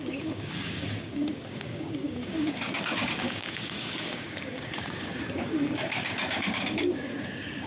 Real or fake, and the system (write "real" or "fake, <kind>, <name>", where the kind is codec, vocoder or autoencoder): fake, codec, DAC